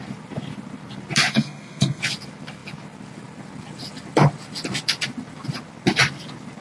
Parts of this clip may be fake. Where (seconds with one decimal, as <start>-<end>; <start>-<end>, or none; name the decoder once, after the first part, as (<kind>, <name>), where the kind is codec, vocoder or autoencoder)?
1.3-2.0 (codec, SNAC)